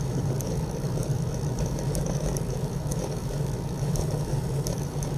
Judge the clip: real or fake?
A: fake